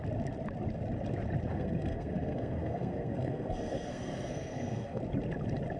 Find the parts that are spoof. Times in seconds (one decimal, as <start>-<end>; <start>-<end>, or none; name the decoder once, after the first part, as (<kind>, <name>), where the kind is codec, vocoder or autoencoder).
1.5-5.0 (codec, SNAC)